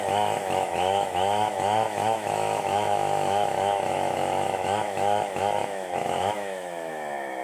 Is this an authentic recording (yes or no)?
no